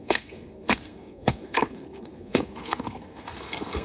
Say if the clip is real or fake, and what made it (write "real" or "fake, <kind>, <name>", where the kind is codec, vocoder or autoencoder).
fake, codec, SNAC